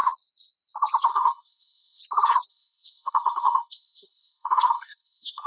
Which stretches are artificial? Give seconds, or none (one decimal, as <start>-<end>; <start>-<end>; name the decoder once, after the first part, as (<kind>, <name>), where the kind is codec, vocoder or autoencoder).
1.1-2.0 (codec, SNAC); 2.5-5.5